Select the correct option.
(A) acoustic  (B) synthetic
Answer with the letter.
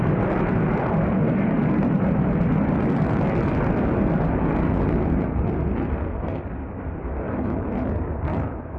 A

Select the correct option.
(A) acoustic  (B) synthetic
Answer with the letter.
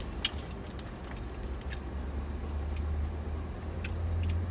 A